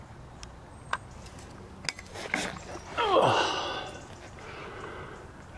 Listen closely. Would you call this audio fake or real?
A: real